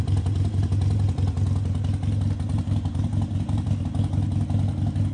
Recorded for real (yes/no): yes